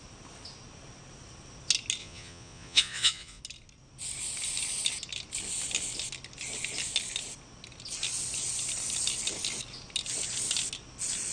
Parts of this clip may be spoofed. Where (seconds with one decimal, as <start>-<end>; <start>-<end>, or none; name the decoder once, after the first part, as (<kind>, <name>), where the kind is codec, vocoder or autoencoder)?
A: 2.0-3.4 (vocoder, Vocos)